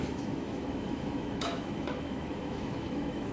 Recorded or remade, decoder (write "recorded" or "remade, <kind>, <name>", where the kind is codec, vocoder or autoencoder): remade, autoencoder, DAC-VAE